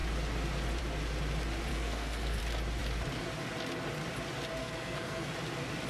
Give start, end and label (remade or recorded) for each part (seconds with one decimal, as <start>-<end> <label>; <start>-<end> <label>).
0.0-1.7 recorded; 1.7-2.4 remade; 2.4-4.6 recorded; 4.6-5.3 remade; 5.3-5.9 recorded